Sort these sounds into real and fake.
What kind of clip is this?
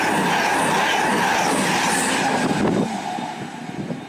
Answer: real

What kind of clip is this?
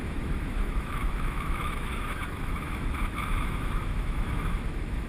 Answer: fake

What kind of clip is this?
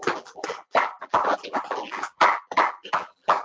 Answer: fake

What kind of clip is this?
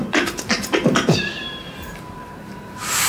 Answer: fake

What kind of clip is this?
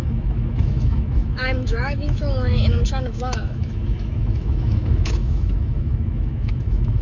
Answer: fake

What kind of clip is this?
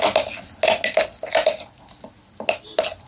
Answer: real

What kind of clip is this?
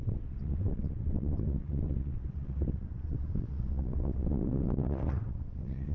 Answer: fake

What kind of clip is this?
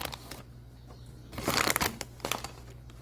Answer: real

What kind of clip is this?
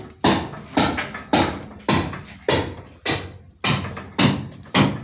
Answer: real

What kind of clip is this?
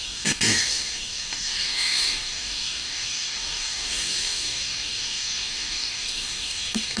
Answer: fake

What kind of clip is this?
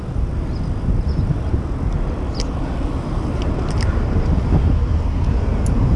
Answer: real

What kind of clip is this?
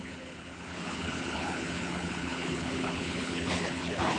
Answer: fake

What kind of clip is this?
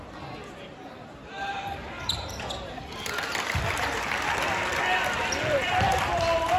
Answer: fake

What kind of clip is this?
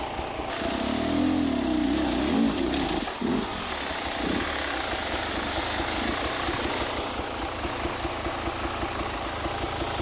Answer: real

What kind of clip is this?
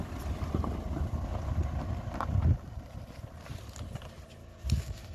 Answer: real